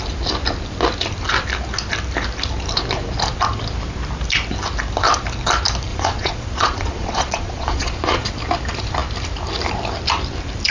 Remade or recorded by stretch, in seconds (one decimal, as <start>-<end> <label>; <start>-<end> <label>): 0.0-5.9 recorded; 5.9-8.3 remade; 8.3-10.7 recorded